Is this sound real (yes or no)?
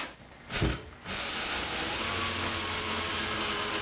yes